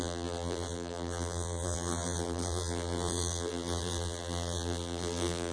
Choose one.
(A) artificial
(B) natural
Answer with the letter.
A